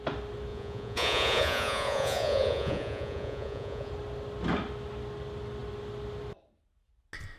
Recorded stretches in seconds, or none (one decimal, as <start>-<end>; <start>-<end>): 0.0-0.5; 3.9-7.4